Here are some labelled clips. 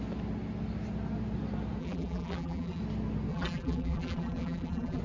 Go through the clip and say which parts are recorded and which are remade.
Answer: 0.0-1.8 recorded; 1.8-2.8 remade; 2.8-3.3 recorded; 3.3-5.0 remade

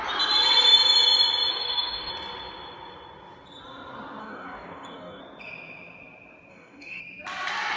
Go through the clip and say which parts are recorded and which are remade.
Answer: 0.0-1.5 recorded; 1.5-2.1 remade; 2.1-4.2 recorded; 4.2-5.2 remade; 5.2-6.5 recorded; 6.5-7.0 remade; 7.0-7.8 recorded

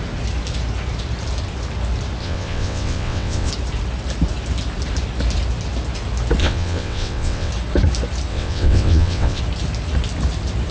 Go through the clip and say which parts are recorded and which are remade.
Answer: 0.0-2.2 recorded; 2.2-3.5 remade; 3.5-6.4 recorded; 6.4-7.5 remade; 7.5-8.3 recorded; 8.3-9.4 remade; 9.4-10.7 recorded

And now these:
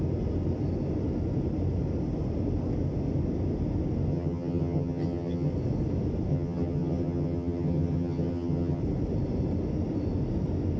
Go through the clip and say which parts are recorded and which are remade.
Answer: 0.0-4.1 recorded; 4.1-5.5 remade; 5.5-6.3 recorded; 6.3-8.8 remade; 8.8-10.8 recorded

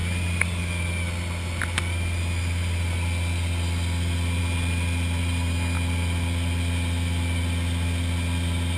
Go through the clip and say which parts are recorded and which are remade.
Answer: 0.0-8.8 recorded

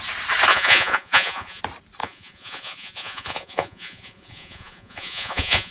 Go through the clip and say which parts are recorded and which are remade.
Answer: 0.0-0.5 recorded; 0.5-1.6 remade; 1.6-2.0 recorded; 2.0-5.7 remade